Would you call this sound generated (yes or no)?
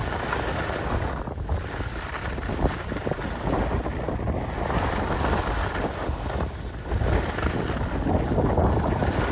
no